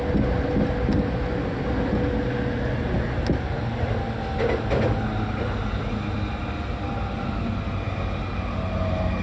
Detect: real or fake real